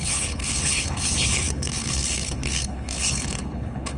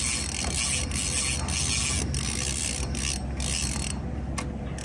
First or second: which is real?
second